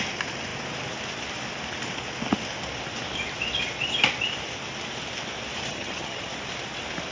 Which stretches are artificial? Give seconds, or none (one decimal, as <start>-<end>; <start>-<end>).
5.7-6.3

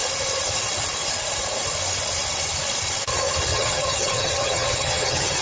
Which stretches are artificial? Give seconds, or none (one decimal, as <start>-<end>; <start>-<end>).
3.5-5.4